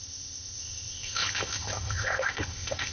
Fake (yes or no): yes